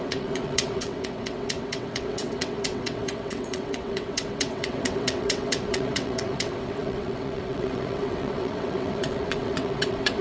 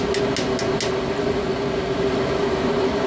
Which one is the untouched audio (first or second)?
second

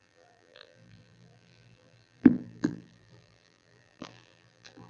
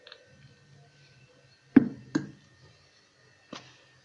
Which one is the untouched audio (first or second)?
second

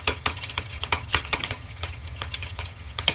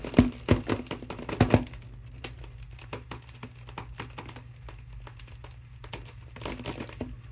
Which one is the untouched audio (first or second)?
second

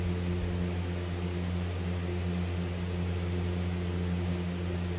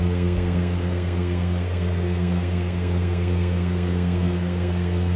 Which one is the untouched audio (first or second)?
first